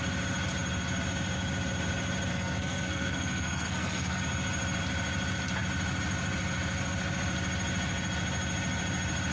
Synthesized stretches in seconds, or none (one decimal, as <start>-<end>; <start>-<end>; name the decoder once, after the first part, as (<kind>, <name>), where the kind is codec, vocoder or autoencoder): 2.3-4.2 (codec, SNAC)